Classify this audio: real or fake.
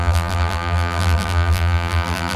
fake